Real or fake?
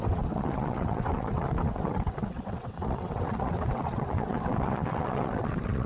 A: fake